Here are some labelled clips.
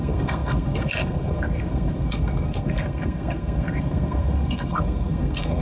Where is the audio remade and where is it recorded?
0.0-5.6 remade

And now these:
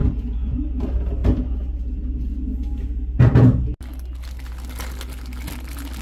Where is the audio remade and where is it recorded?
0.0-0.7 remade; 0.7-6.0 recorded

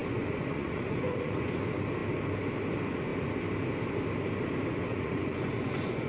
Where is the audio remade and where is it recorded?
0.0-1.6 remade; 1.6-4.9 recorded; 4.9-6.1 remade

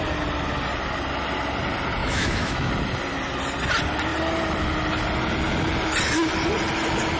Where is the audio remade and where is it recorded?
0.0-2.0 recorded; 2.0-2.7 remade; 2.7-7.2 recorded

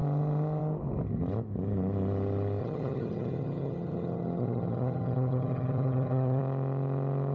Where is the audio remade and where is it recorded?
0.0-2.6 recorded; 2.6-6.4 remade; 6.4-7.3 recorded

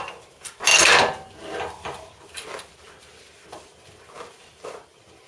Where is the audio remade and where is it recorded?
0.0-5.3 recorded

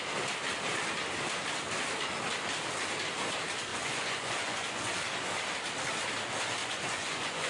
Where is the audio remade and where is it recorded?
0.0-3.7 recorded; 3.7-4.9 remade; 4.9-6.6 recorded; 6.6-7.5 remade